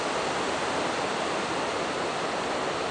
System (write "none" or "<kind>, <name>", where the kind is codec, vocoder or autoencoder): none